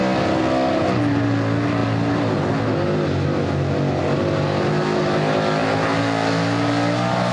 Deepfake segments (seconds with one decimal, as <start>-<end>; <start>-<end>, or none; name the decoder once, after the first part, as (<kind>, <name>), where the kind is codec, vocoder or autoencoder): none